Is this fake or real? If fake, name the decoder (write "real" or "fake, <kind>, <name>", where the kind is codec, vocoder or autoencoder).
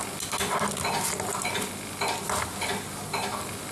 real